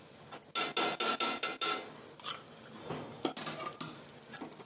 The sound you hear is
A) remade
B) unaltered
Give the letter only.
B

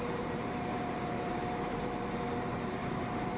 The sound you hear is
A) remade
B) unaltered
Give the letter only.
A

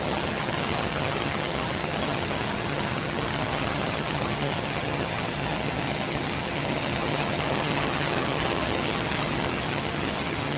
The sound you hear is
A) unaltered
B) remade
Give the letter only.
B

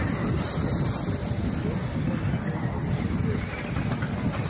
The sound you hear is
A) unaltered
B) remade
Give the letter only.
A